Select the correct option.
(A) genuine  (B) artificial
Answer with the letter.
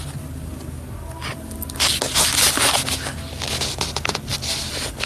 A